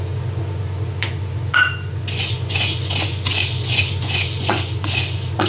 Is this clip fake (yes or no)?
yes